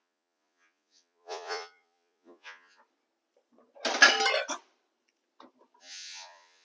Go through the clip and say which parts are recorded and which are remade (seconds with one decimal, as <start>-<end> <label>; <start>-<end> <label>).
0.0-2.8 remade; 2.8-5.8 recorded; 5.8-6.6 remade